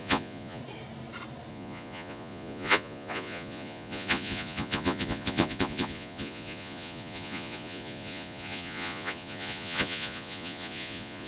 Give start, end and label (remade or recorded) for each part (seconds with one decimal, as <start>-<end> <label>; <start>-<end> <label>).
0.0-0.6 remade; 0.6-1.5 recorded; 1.5-11.3 remade